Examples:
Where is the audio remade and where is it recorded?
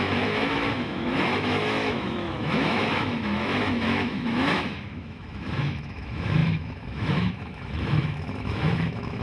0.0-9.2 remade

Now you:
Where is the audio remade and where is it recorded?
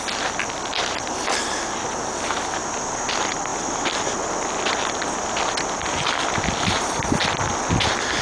0.0-8.2 recorded